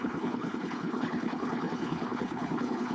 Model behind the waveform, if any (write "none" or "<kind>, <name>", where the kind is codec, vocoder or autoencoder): codec, HILCodec